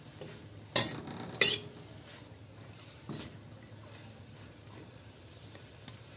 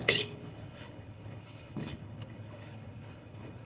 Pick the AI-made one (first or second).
second